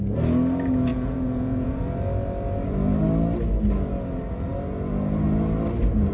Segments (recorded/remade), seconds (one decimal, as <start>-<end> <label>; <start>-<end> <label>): 0.0-0.9 recorded; 0.9-1.8 remade; 1.8-6.1 recorded